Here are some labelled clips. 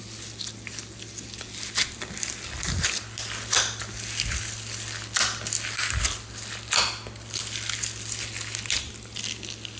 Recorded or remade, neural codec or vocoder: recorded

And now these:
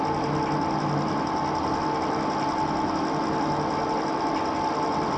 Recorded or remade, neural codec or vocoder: recorded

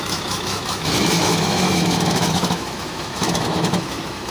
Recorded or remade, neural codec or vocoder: remade, autoencoder, DAC-VAE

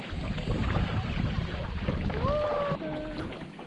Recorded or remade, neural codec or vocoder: recorded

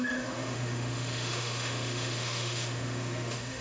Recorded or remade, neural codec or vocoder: remade, autoencoder, DAC-VAE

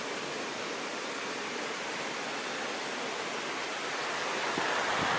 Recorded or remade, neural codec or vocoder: recorded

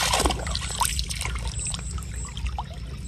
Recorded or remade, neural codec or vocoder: recorded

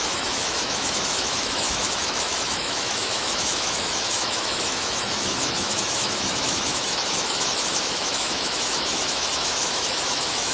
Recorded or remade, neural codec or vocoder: remade, autoencoder, DAC-VAE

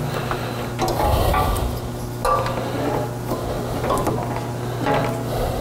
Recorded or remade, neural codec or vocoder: recorded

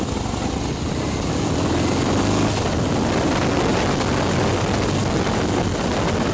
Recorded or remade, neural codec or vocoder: recorded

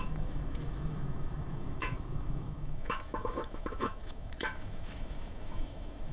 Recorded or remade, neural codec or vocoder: remade, autoencoder, DAC-VAE